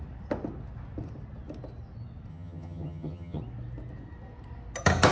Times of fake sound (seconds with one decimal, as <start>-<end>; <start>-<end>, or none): 2.3-3.4

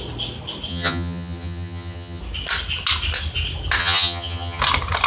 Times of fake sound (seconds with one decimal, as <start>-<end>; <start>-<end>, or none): 0.7-2.2; 3.8-4.6

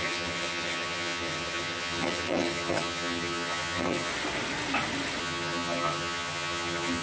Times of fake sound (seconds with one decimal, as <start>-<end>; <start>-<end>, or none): 0.0-4.1; 5.2-7.0